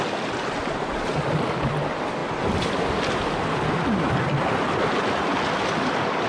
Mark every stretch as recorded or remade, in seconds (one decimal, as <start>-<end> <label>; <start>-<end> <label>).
0.0-6.3 recorded